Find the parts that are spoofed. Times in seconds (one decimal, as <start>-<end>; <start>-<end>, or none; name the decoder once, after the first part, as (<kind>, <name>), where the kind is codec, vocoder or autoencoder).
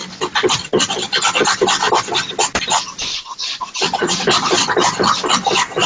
3.0-4.2 (vocoder, Vocos)